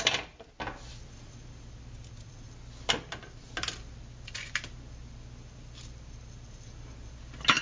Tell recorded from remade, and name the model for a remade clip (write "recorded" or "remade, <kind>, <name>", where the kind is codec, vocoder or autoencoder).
recorded